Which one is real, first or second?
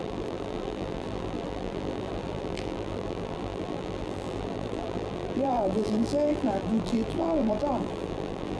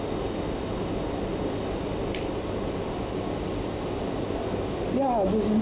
second